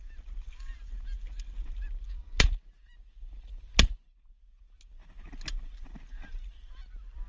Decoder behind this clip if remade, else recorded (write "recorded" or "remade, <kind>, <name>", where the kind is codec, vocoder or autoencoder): recorded